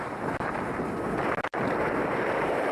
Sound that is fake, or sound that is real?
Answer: real